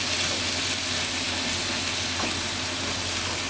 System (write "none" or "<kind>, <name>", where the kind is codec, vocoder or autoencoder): none